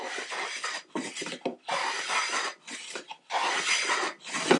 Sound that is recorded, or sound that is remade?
recorded